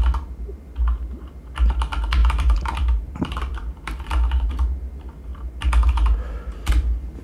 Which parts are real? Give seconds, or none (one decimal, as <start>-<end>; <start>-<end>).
0.0-2.2; 4.5-5.3; 6.7-7.2